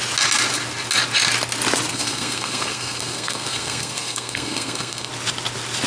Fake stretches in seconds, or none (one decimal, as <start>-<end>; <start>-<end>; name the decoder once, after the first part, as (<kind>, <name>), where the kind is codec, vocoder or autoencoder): 1.9-5.1 (codec, SNAC)